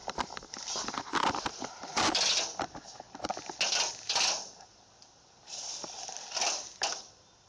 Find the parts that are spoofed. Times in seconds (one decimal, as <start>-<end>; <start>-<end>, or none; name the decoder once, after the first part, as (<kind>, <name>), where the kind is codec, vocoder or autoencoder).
none